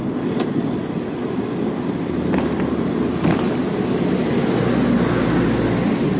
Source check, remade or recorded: recorded